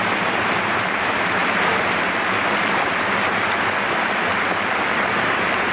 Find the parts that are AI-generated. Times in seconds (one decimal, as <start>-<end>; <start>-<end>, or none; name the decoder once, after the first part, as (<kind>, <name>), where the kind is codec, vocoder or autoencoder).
0.0-5.7 (vocoder, BigVGAN v2)